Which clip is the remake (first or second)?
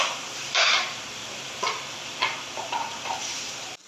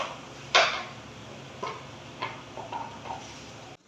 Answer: first